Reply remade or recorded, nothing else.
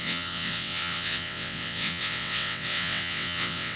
remade